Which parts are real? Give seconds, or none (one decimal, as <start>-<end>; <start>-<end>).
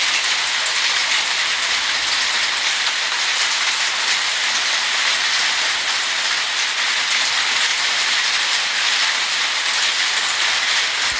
0.0-7.7; 9.4-11.2